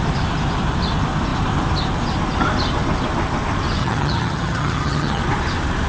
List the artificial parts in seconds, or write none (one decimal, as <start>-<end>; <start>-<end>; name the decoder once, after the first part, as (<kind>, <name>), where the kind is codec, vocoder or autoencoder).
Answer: 3.8-5.2 (vocoder, HiFi-GAN)